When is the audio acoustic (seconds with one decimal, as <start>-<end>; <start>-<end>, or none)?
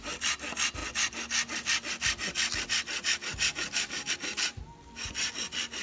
0.0-5.8